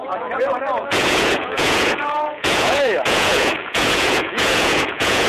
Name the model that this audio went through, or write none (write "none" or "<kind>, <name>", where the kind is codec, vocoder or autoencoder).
vocoder, Vocos